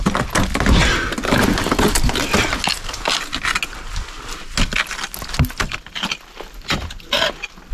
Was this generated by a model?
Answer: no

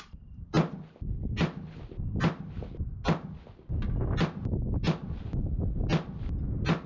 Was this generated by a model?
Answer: no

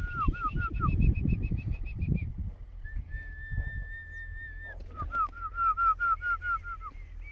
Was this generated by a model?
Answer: no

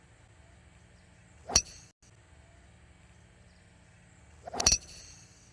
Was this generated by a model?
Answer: no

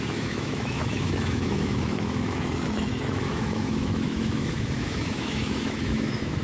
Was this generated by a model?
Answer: yes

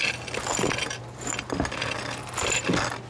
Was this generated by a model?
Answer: no